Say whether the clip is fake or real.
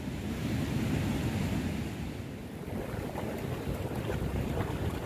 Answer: real